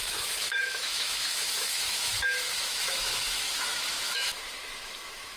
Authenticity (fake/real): fake